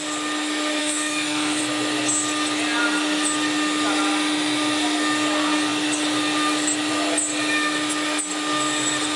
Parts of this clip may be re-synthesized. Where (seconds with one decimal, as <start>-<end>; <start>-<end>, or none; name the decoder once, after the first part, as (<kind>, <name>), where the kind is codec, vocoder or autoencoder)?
0.8-1.6 (autoencoder, DAC-VAE)